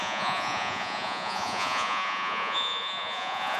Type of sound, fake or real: fake